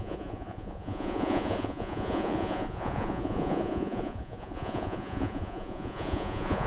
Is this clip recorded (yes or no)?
no